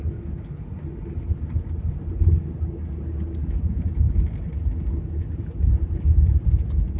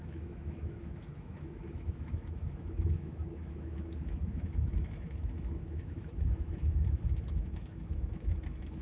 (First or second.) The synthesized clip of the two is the second